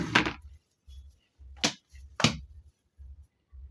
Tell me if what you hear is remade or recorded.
recorded